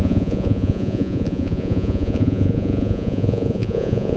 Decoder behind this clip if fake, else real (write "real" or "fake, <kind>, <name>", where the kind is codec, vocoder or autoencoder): fake, vocoder, Vocos